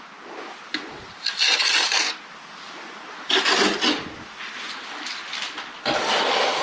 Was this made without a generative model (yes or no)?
yes